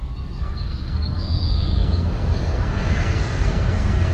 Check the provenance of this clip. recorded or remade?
remade